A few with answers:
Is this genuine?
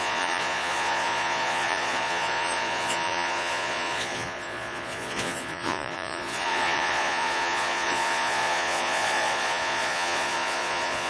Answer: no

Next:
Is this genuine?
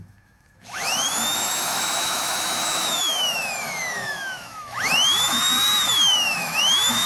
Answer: no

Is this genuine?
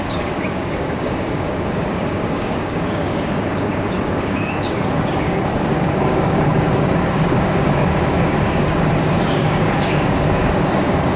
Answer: no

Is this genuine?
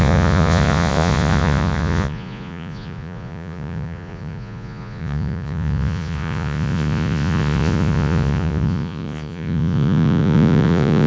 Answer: no